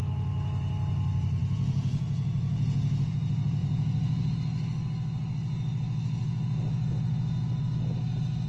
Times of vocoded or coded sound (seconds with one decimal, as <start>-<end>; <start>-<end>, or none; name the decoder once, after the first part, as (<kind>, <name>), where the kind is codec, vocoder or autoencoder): 1.4-3.1 (vocoder, Vocos); 3.6-4.3; 6.2-7.6